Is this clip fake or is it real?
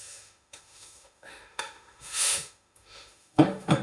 fake